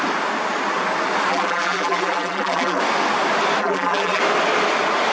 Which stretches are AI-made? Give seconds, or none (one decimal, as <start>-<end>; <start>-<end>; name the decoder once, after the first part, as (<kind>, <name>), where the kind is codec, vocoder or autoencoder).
1.3-2.8 (vocoder, BigVGAN v2); 3.6-4.2